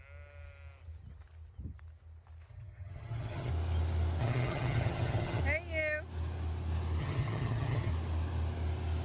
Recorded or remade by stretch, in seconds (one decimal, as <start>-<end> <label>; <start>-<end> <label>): 0.0-2.5 recorded; 2.5-3.5 remade; 3.5-4.2 recorded; 4.2-5.4 remade; 5.4-7.0 recorded; 7.0-7.9 remade; 7.9-9.0 recorded